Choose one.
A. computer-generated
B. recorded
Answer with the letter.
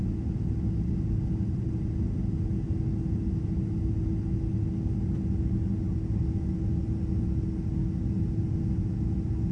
B